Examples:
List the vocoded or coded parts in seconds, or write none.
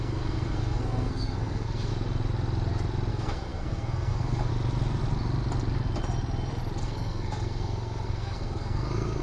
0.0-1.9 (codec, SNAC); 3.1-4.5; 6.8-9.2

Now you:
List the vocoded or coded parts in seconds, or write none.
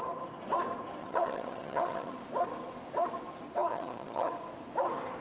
1.0-2.2 (vocoder, HiFi-GAN); 3.7-4.3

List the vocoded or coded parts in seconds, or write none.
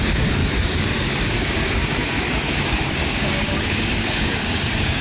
0.0-5.0 (codec, DAC)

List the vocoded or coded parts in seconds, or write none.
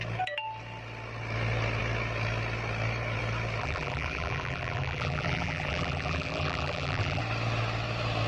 3.6-7.2 (vocoder, BigVGAN v2)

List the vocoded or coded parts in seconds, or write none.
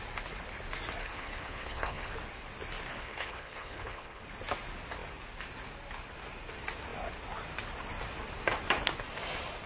1.0-2.1 (codec, HILCodec); 2.9-4.2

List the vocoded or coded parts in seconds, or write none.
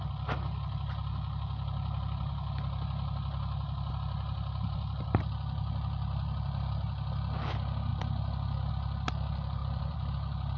9.6-10.1 (vocoder, BigVGAN v2)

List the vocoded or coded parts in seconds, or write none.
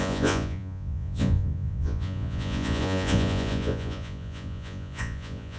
0.0-5.6 (vocoder, Vocos)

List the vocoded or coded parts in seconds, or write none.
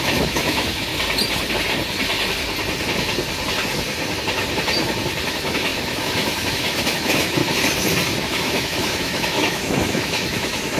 0.0-0.9 (autoencoder, DAC-VAE); 5.3-7.4; 8.2-10.8